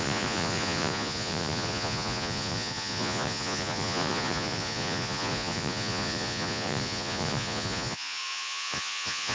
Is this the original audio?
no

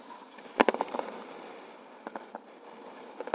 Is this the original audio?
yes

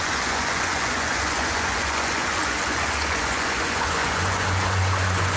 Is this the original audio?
no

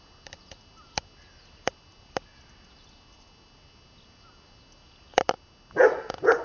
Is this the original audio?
yes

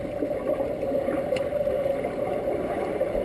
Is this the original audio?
yes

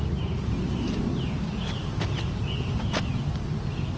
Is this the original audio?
yes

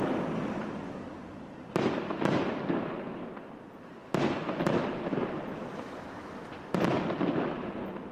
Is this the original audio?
yes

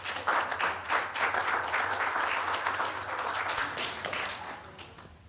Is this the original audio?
yes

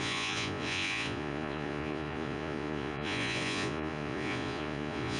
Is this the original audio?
no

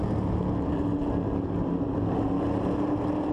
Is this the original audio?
yes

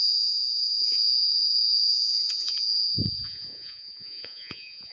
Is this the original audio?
no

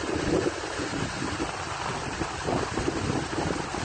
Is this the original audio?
yes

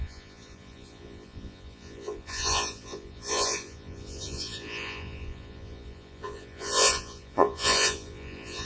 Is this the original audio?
no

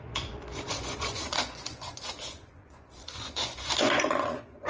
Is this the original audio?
no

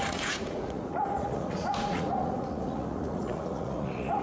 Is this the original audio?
no